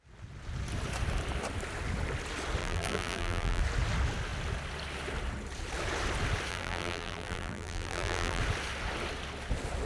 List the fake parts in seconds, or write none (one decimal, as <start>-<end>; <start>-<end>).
2.6-3.6; 6.5-8.4